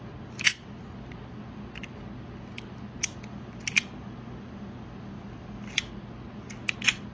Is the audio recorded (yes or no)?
yes